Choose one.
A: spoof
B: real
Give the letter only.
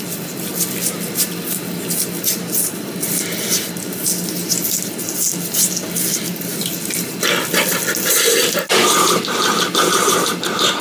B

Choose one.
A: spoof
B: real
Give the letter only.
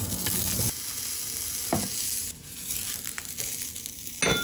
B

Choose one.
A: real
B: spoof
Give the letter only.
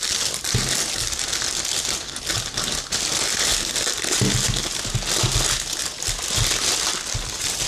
A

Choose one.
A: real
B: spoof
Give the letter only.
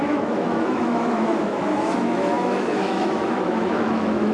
B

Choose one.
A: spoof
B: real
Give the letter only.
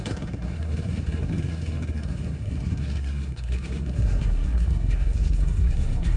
A